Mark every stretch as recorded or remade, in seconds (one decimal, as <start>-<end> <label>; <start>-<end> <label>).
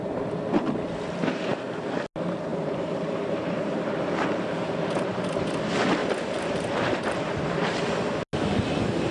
0.0-2.5 recorded; 2.5-5.5 remade; 5.5-6.0 recorded; 6.0-7.4 remade; 7.4-9.1 recorded